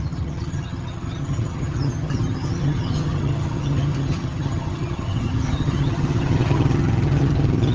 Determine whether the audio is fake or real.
fake